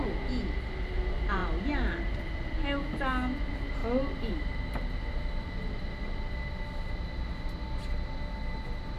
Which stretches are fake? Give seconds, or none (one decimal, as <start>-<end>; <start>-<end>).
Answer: none